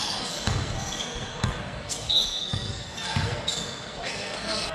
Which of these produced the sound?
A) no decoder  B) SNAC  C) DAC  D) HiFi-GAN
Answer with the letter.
B